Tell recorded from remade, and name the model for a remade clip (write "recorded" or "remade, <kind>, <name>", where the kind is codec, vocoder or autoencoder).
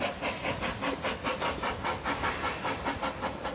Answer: recorded